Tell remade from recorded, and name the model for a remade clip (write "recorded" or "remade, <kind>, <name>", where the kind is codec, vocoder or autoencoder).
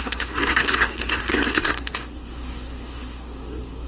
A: remade, codec, SNAC